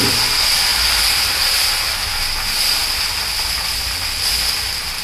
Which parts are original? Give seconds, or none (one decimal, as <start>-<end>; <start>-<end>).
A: 0.0-0.7; 2.1-5.0